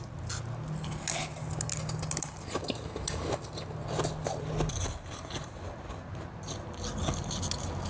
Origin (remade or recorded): recorded